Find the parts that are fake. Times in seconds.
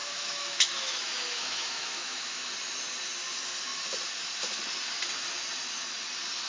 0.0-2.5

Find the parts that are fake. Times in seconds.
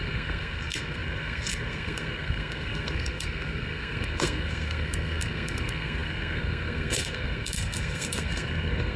0.0-9.0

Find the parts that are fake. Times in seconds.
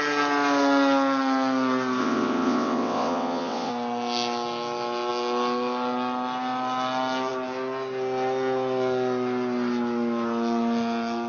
2.0-3.7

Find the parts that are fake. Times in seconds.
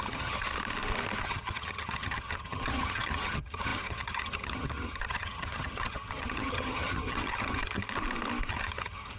0.0-0.5; 1.2-7.8; 8.5-9.2